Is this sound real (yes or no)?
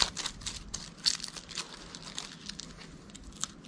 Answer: yes